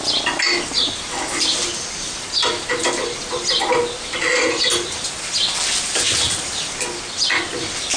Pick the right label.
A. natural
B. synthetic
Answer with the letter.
A